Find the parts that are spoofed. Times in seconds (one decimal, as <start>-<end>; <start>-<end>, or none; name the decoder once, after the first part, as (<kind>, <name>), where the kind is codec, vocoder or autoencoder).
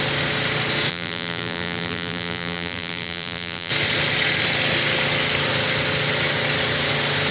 0.9-3.7 (vocoder, BigVGAN v2)